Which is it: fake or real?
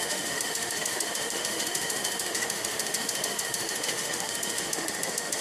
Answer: fake